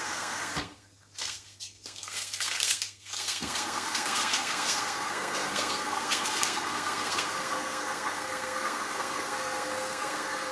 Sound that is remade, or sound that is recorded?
remade